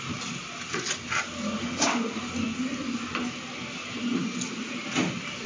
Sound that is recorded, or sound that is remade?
recorded